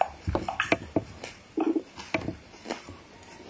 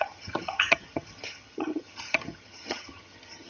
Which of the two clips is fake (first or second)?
second